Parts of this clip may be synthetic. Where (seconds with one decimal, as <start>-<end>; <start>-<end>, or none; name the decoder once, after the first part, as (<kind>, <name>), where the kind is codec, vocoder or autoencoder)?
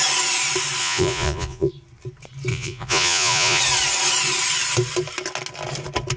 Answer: 0.8-1.7 (vocoder, Vocos); 2.5-3.6